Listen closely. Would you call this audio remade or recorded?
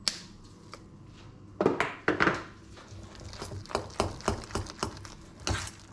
recorded